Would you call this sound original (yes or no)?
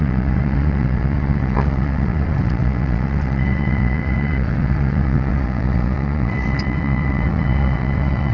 no